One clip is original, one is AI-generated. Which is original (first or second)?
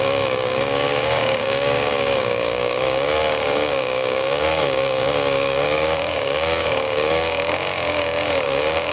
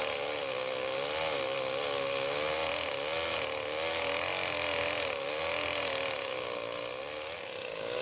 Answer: second